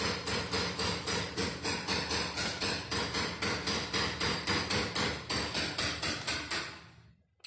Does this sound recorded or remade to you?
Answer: recorded